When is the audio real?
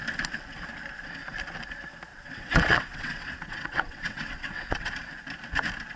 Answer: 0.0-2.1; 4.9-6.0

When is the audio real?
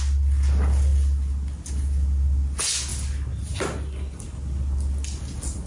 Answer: 0.0-5.7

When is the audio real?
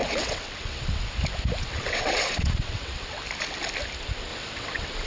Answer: 1.1-1.6; 3.2-4.3